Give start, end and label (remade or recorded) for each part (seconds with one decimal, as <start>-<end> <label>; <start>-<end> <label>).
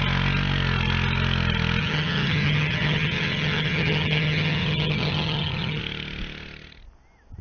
0.0-1.8 recorded; 1.8-5.8 remade; 5.8-7.4 recorded